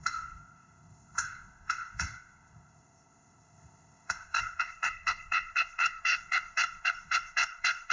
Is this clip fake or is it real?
fake